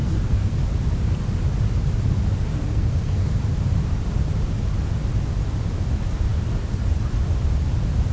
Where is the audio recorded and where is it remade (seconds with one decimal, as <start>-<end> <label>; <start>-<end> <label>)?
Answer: 0.0-0.6 remade; 0.6-2.7 recorded; 2.7-3.4 remade; 3.4-8.1 recorded